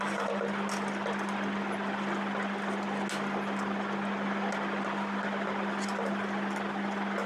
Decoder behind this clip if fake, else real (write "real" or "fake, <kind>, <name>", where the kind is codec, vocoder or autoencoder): real